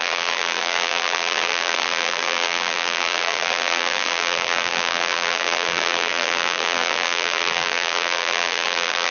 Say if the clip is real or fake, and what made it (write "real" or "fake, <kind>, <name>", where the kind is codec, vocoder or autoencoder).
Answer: fake, vocoder, BigVGAN v2